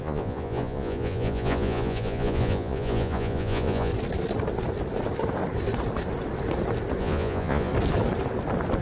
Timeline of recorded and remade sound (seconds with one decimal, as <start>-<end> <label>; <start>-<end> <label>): 0.0-3.9 remade; 3.9-7.0 recorded; 7.0-7.7 remade; 7.7-8.8 recorded